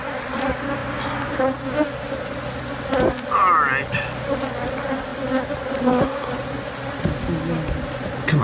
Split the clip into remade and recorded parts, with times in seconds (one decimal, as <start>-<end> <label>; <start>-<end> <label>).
0.0-8.4 recorded